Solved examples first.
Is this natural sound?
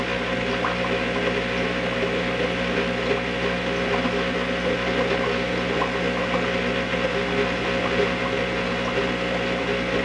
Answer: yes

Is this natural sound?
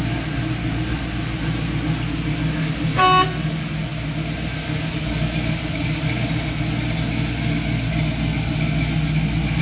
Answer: yes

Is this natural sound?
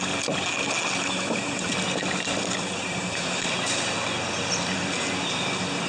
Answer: yes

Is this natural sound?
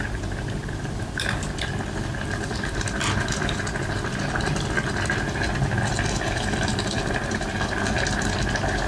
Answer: yes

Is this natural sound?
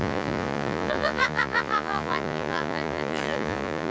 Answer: no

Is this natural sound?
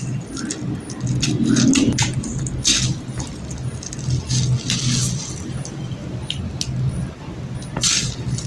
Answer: yes